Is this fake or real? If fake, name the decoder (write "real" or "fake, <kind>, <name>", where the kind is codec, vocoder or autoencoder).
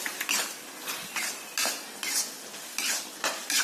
real